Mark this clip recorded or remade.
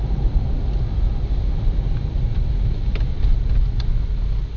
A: recorded